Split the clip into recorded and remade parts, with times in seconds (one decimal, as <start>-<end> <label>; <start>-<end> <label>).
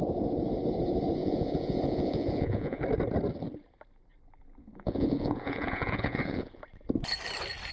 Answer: 0.0-1.2 recorded; 1.2-2.8 remade; 2.8-4.6 recorded; 4.6-6.6 remade; 6.6-7.7 recorded